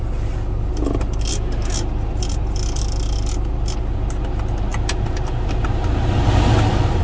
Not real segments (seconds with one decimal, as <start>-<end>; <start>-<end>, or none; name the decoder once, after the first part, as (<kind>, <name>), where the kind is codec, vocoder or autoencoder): none

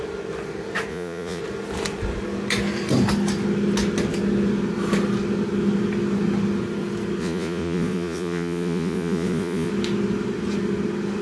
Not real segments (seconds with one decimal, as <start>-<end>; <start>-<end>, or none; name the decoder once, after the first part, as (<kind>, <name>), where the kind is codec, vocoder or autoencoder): 0.9-1.4 (vocoder, Vocos); 7.2-9.7

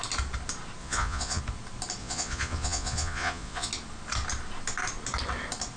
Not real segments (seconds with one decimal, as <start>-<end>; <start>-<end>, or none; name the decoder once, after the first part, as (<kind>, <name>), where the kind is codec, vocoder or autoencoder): 0.8-1.4 (vocoder, Vocos); 2.0-3.7

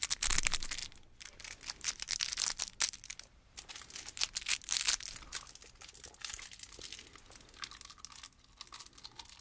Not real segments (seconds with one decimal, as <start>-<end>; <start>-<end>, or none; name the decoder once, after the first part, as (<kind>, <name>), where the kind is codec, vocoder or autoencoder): none

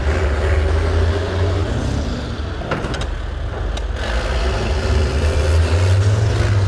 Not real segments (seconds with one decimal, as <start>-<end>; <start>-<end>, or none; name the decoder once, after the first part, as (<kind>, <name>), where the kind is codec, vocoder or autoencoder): none

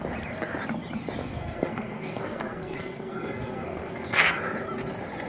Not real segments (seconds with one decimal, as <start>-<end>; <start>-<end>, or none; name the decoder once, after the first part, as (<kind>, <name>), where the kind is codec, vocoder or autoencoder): 1.2-4.4 (codec, SNAC)

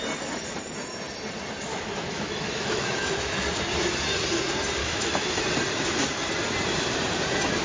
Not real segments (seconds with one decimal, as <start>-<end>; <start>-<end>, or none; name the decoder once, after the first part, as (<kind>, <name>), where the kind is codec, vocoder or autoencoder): 1.7-3.6 (autoencoder, DAC-VAE); 4.8-5.4